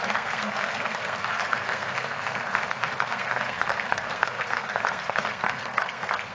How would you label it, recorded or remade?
remade